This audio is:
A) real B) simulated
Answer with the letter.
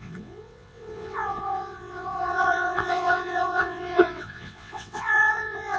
B